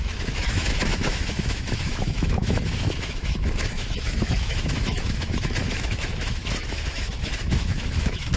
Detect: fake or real fake